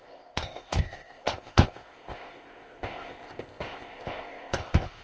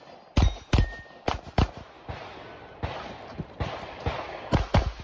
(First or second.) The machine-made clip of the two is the first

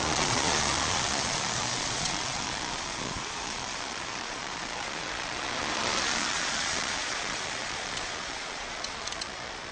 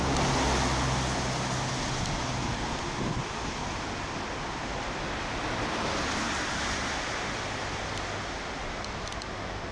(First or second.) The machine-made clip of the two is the first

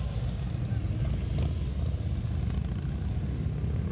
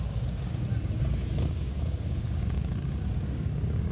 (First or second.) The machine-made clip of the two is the second